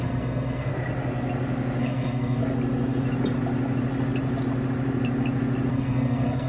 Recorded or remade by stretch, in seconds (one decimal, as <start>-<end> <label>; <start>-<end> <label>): 0.0-0.7 remade; 0.7-1.8 recorded; 1.8-2.4 remade; 2.4-5.7 recorded; 5.7-6.5 remade